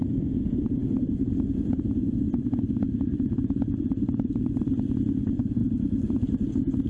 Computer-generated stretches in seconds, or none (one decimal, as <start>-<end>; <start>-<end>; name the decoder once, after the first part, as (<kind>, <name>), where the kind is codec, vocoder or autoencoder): 3.1-4.6 (vocoder, BigVGAN v2); 5.6-6.5